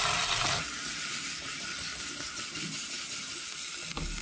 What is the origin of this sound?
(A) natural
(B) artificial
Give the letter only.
A